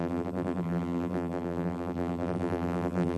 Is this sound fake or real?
fake